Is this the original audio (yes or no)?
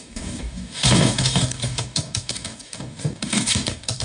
no